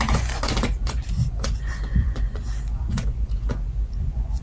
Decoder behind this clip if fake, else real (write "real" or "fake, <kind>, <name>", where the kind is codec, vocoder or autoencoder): fake, vocoder, Vocos